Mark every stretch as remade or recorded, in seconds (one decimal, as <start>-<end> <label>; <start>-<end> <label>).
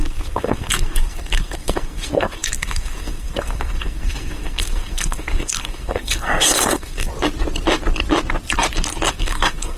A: 0.0-7.1 remade; 7.1-9.1 recorded; 9.1-9.8 remade